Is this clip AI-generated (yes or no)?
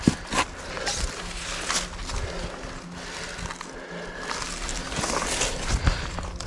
no